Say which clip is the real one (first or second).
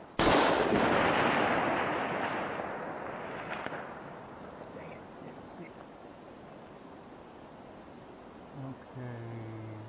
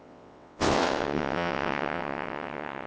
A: first